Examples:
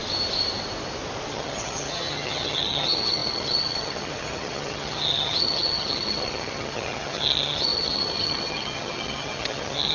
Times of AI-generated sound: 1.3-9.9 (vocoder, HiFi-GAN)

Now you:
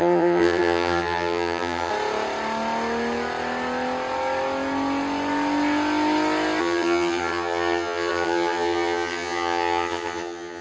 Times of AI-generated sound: 0.0-1.9 (vocoder, HiFi-GAN); 6.6-10.6